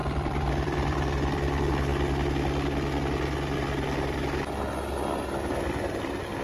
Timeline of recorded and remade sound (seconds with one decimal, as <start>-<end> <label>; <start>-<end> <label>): 0.0-1.9 remade; 1.9-5.7 recorded; 5.7-6.4 remade